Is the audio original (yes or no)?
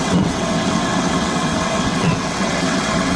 no